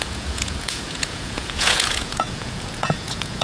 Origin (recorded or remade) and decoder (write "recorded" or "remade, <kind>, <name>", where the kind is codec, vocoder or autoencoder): remade, vocoder, Vocos